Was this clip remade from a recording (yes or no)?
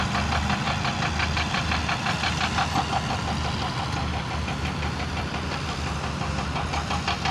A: no